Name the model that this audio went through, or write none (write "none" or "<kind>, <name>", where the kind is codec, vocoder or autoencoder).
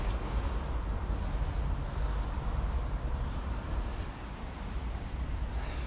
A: none